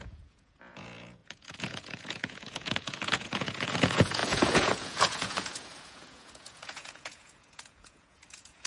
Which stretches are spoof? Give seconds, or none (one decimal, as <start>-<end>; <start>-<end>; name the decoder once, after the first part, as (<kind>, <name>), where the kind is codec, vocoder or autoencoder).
0.0-8.7 (vocoder, Vocos)